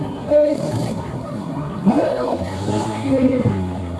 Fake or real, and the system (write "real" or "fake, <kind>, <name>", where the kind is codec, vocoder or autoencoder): fake, codec, SNAC